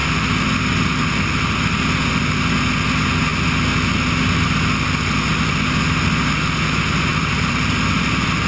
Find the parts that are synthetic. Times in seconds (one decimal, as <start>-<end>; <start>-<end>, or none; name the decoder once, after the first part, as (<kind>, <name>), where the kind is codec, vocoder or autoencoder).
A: 7.1-8.0 (vocoder, BigVGAN v2)